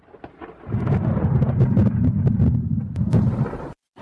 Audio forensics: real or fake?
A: real